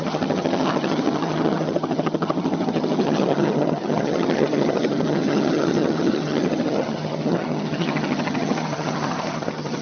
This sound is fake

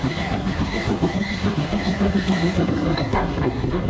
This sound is fake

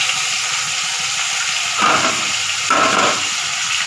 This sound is real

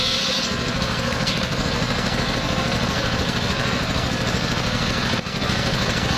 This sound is fake